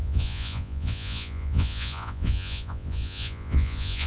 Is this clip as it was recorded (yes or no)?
no